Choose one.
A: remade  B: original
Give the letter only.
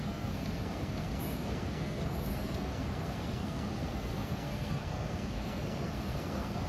A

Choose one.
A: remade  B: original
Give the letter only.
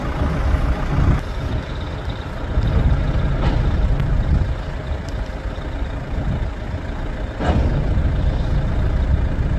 B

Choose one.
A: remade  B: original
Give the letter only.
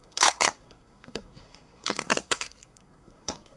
A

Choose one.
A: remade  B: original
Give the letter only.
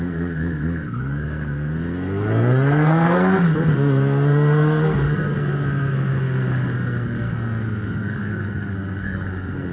A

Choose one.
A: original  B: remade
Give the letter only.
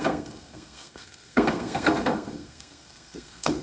B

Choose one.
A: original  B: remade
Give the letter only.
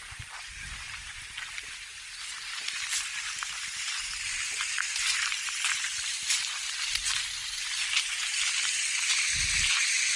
A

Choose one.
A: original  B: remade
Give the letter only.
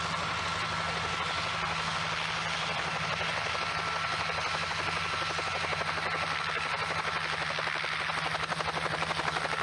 A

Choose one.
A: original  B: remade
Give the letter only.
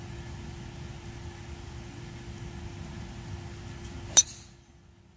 A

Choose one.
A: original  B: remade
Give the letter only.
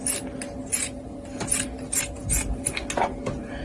A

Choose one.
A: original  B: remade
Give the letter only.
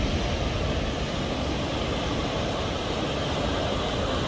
A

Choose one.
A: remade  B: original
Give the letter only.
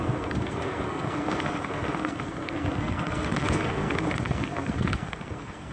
A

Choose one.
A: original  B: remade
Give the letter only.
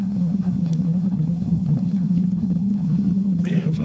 B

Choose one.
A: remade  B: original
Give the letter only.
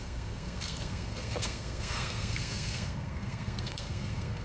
A